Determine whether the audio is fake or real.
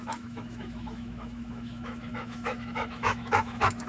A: fake